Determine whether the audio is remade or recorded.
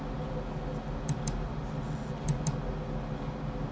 recorded